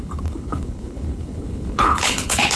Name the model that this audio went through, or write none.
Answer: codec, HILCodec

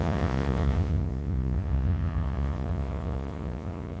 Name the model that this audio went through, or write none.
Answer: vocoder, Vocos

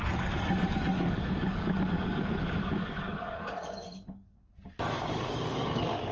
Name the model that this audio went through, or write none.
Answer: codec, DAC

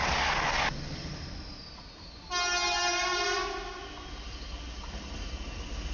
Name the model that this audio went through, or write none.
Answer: none